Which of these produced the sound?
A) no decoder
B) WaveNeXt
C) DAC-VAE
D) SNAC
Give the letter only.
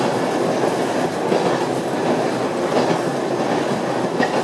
A